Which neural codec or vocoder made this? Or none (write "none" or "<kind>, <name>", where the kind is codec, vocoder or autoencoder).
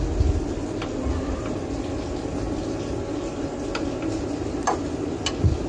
none